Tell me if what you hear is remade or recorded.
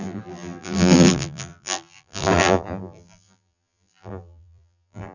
remade